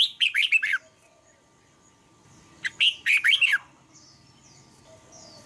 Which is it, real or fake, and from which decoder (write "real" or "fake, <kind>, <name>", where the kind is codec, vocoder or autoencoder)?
real